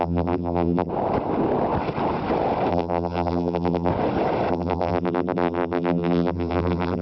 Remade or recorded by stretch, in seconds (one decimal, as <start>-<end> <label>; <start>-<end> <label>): 0.0-0.9 remade; 0.9-2.7 recorded; 2.7-3.9 remade; 3.9-4.5 recorded; 4.5-7.0 remade